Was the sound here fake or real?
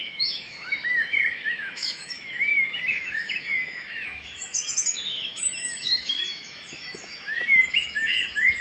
fake